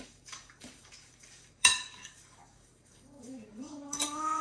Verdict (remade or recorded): remade